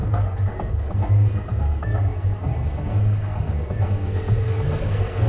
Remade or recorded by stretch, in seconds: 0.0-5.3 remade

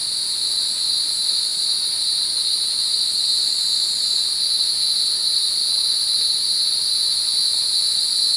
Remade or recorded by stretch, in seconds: 0.0-7.3 recorded; 7.3-7.9 remade; 7.9-8.4 recorded